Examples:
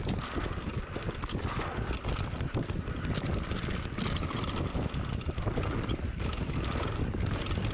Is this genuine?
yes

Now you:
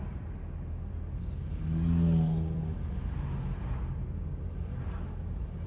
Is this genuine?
yes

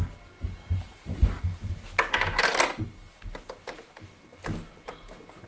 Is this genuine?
yes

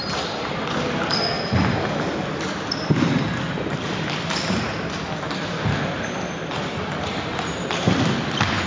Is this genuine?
yes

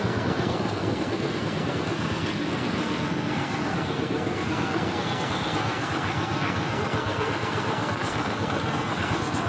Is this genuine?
no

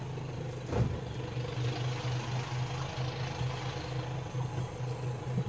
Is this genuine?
yes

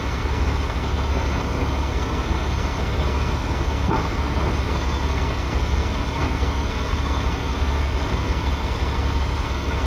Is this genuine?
no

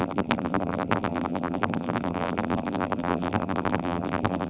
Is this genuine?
no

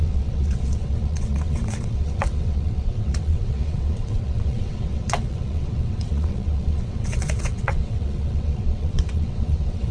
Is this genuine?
no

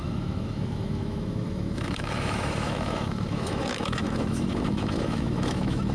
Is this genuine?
no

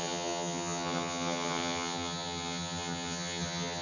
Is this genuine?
no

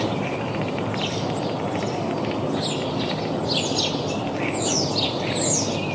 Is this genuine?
yes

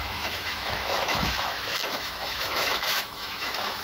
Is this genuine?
no